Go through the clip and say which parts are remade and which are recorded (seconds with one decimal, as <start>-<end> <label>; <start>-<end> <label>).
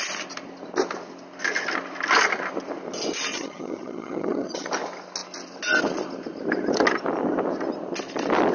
0.0-3.3 recorded; 3.3-4.7 remade; 4.7-8.5 recorded